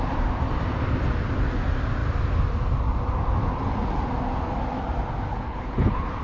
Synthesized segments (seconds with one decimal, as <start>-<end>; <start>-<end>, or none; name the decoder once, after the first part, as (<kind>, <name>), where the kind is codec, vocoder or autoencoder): 5.3-6.2 (codec, HILCodec)